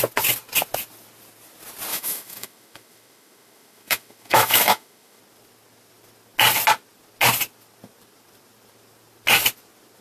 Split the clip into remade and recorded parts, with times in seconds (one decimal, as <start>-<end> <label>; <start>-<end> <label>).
0.0-1.9 recorded; 1.9-5.2 remade; 5.2-10.0 recorded